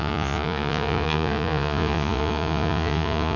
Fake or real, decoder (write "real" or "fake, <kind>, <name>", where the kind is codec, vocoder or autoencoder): fake, vocoder, Vocos